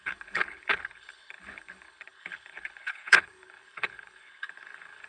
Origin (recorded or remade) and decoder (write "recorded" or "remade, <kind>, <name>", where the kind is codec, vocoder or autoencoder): remade, codec, HILCodec